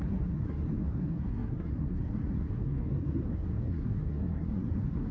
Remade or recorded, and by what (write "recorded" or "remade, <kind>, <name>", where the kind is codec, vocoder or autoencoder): remade, codec, SNAC